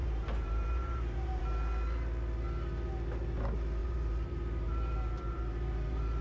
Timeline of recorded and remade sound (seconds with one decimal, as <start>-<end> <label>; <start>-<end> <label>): 0.0-1.4 remade; 1.4-3.8 recorded; 3.8-6.2 remade